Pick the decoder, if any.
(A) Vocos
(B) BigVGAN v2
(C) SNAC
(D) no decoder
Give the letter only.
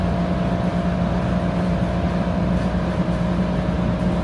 D